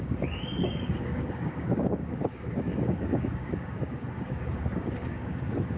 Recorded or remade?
remade